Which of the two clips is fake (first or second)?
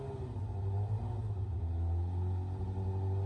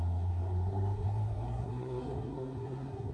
second